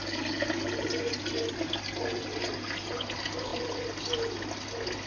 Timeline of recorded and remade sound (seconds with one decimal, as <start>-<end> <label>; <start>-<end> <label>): 0.0-5.1 recorded